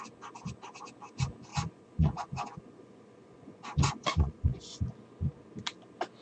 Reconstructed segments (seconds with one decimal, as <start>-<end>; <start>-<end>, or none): 1.5-4.8

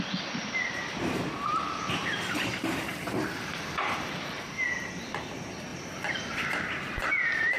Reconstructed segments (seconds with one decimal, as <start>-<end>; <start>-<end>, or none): 0.0-2.0; 2.8-5.7; 6.3-7.6

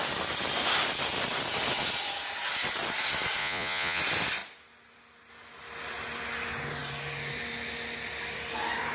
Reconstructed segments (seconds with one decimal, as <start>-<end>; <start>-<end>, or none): 3.4-4.0